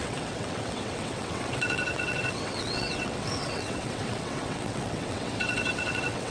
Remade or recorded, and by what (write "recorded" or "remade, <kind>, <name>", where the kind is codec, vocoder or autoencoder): remade, vocoder, WaveNeXt